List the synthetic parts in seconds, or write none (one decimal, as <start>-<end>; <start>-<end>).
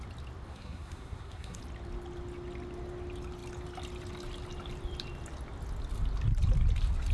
0.5-1.6